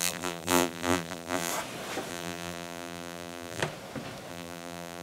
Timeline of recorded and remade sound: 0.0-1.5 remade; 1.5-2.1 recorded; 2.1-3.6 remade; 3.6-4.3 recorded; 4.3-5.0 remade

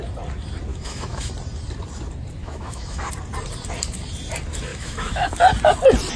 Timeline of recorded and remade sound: 0.0-0.7 recorded; 0.7-1.3 remade; 1.3-2.4 recorded; 2.4-3.1 remade; 3.1-4.7 recorded; 4.7-5.3 remade; 5.3-6.2 recorded